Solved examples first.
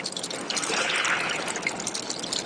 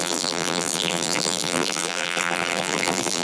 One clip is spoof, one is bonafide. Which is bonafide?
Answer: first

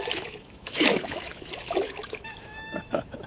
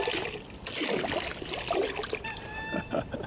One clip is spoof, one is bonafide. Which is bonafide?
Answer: second